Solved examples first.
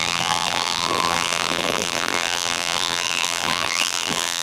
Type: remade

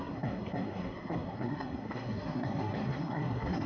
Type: remade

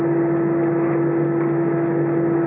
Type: recorded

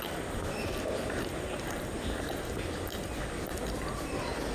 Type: recorded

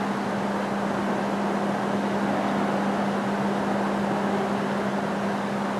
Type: recorded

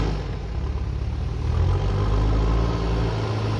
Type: recorded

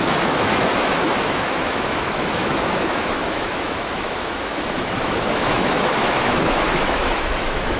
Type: remade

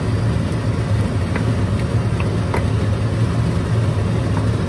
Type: recorded